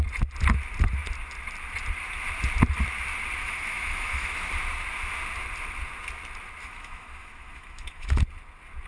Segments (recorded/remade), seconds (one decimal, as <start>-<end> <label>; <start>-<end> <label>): 0.0-3.4 recorded; 3.4-4.5 remade; 4.5-6.6 recorded; 6.6-8.2 remade; 8.2-8.9 recorded

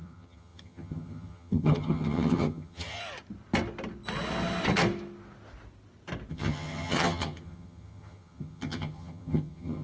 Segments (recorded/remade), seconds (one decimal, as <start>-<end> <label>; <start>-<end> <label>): 0.0-3.0 remade; 3.0-6.3 recorded; 6.3-9.8 remade

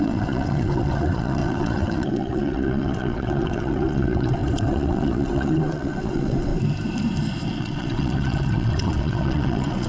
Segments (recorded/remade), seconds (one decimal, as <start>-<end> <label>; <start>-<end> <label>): 0.0-6.5 remade; 6.5-7.6 recorded; 7.6-9.9 remade

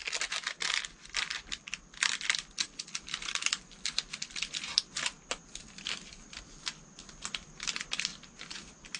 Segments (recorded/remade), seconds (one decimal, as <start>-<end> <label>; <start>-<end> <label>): 0.0-9.0 remade